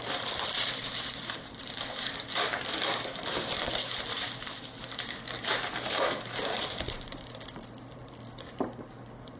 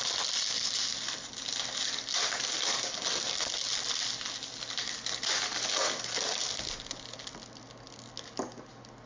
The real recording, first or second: second